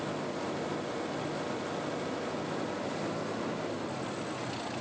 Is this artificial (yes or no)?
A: no